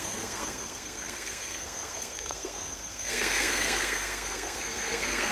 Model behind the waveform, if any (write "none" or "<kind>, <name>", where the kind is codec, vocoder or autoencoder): codec, SNAC